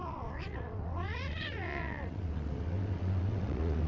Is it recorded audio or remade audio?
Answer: remade